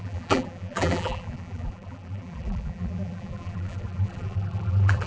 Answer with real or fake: fake